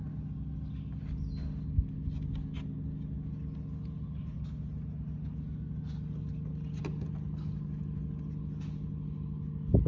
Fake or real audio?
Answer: real